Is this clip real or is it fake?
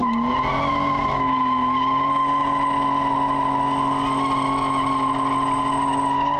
real